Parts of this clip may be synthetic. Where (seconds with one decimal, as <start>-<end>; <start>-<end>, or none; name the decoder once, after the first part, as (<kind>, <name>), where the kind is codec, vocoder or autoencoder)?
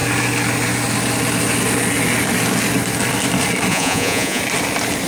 3.7-4.4 (vocoder, Vocos)